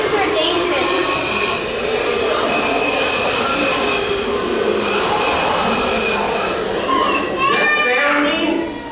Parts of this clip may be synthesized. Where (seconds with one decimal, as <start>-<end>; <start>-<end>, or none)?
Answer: none